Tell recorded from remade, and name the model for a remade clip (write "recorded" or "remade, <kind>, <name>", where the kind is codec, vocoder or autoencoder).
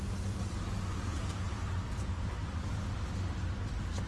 recorded